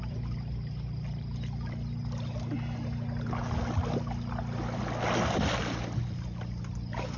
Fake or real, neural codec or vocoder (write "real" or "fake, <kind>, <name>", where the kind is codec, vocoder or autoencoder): real